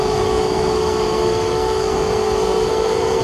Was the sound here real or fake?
fake